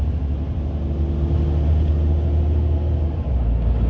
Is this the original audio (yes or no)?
yes